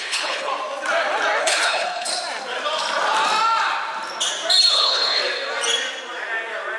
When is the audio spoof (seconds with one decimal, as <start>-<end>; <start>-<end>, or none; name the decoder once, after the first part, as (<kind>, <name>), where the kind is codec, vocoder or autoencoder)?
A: 0.0-0.5 (codec, HILCodec); 1.4-2.1; 4.7-5.2